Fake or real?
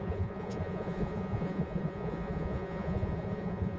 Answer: fake